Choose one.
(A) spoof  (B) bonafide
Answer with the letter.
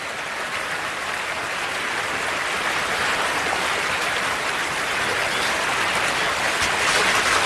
B